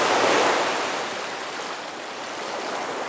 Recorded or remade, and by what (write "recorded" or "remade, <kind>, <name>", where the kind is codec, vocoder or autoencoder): recorded